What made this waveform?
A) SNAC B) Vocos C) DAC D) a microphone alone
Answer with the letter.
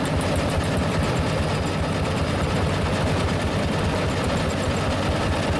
D